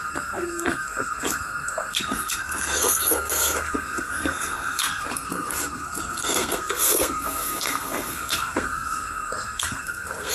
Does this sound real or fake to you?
fake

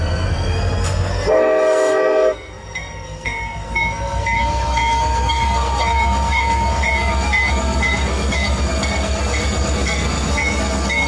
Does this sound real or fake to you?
fake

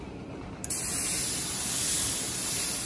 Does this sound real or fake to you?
real